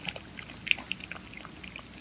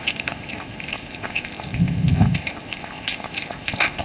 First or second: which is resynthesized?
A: second